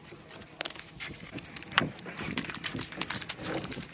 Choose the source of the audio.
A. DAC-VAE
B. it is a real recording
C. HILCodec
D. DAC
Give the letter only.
B